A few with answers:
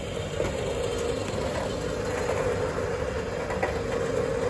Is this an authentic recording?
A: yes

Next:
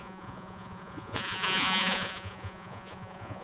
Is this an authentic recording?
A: no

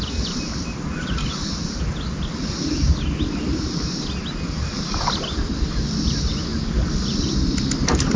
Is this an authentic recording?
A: yes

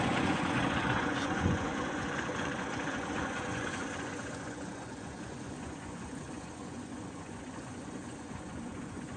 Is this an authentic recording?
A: no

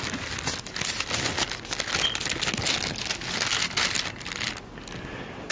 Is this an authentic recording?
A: yes